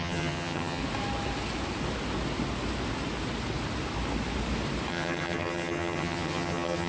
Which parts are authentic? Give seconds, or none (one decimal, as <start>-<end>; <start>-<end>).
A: 0.8-4.9